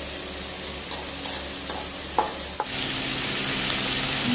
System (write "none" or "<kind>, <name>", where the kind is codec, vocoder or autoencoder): none